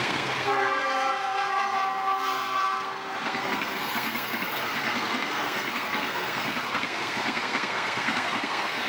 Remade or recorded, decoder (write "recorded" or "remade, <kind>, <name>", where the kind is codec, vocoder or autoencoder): remade, codec, SNAC